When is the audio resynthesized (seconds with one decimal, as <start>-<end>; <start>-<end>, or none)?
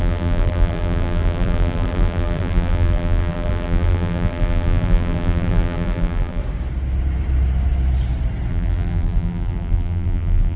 0.0-6.4; 8.5-10.6